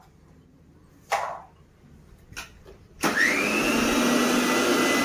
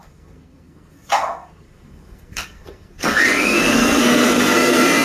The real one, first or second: first